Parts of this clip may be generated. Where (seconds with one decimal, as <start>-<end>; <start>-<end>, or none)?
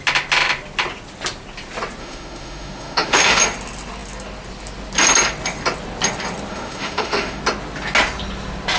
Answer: 2.0-3.4; 6.5-7.4